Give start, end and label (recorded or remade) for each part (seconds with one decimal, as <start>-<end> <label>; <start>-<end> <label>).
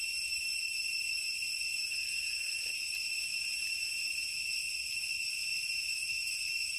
0.0-4.6 remade; 4.6-5.3 recorded; 5.3-6.8 remade